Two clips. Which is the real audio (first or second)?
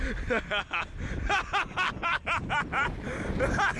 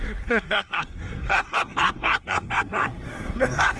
first